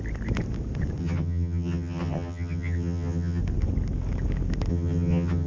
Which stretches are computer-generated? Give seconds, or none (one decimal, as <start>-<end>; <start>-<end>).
1.0-3.4; 4.7-5.5